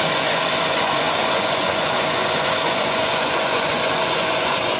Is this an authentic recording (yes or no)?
no